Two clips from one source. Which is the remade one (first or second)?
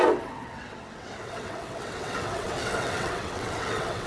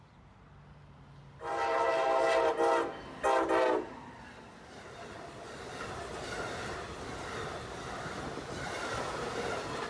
first